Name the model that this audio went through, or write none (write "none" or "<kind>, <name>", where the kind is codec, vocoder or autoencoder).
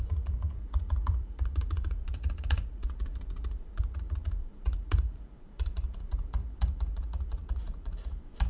vocoder, Vocos